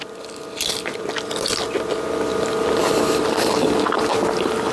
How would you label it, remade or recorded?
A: recorded